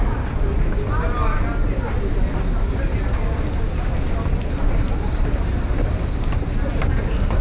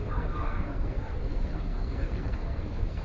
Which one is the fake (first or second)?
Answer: second